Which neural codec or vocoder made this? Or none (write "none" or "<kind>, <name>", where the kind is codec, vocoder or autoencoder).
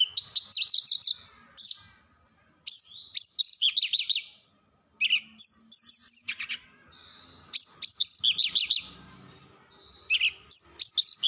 none